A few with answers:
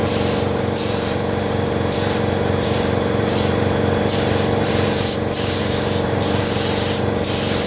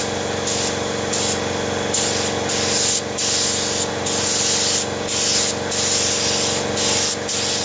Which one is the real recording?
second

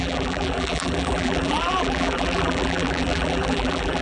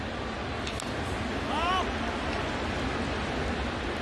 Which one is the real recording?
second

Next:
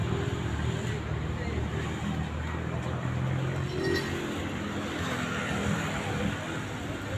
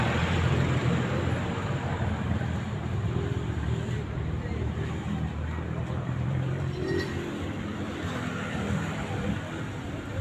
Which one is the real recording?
first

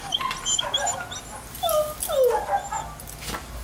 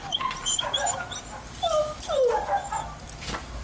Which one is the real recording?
first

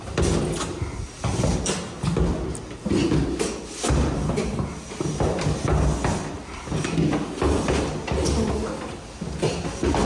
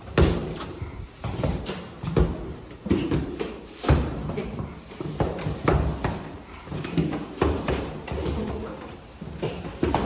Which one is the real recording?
first